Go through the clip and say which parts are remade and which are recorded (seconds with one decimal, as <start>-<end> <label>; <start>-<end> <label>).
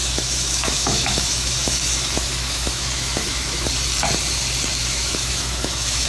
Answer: 0.0-3.7 remade; 3.7-4.8 recorded; 4.8-6.1 remade